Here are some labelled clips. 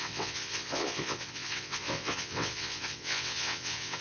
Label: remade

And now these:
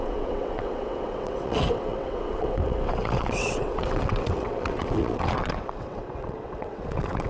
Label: remade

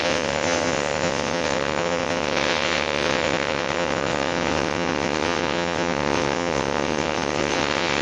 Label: remade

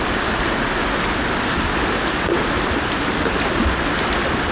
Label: recorded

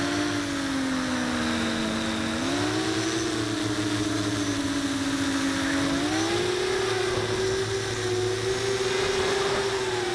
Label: recorded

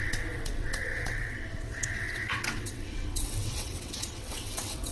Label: remade